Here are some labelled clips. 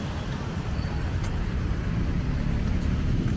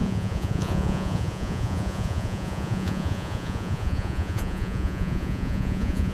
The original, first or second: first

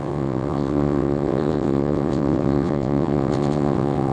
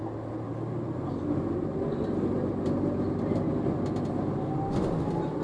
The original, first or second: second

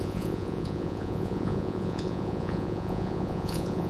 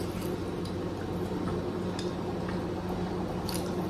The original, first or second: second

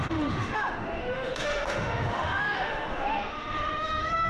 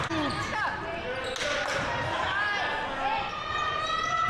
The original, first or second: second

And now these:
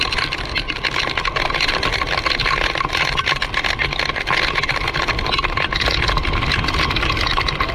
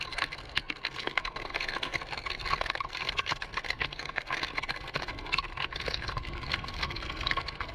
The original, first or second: first